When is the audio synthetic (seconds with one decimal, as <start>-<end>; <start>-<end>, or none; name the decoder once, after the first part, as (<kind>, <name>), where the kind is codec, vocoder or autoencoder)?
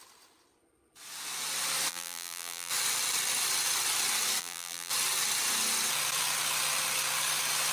1.9-2.7 (vocoder, BigVGAN v2); 4.4-4.9